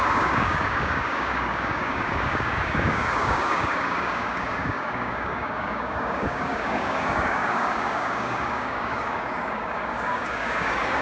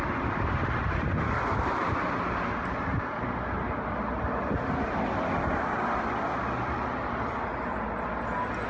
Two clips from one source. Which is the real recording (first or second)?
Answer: second